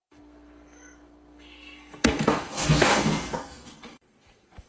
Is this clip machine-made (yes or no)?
yes